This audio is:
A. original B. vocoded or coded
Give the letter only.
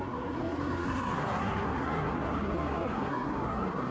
B